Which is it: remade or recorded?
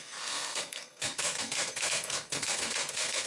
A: remade